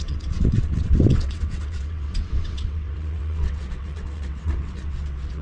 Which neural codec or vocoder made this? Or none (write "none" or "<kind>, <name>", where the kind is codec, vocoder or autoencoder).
vocoder, WaveNeXt